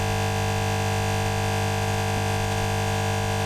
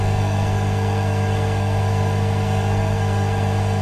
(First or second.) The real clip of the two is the first